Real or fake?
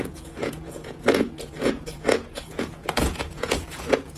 fake